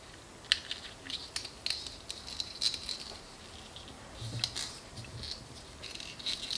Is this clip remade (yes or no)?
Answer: no